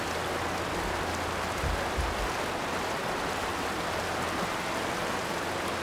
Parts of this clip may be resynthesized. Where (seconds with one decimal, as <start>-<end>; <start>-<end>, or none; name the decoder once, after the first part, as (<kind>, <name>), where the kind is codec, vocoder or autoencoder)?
none